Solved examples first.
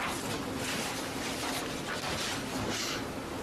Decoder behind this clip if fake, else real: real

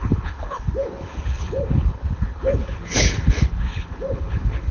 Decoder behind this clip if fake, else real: fake, codec, HILCodec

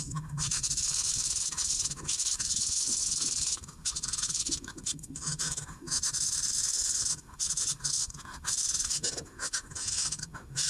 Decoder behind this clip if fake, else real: fake, autoencoder, DAC-VAE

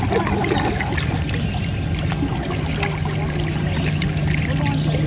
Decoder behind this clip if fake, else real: real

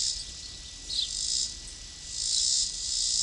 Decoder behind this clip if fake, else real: real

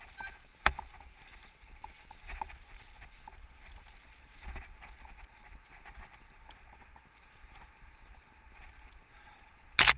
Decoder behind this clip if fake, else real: real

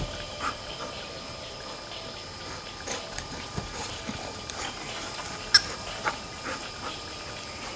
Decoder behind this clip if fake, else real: real